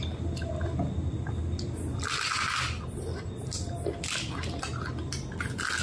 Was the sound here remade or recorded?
recorded